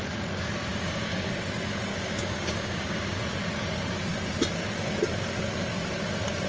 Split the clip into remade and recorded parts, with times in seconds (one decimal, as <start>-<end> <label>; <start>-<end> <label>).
0.0-0.7 recorded; 0.7-1.3 remade; 1.3-1.9 recorded; 1.9-3.2 remade; 3.2-6.5 recorded